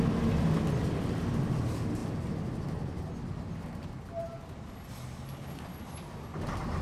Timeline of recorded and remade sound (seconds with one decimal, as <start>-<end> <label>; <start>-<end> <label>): 0.0-6.8 recorded